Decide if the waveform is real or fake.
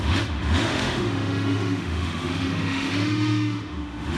fake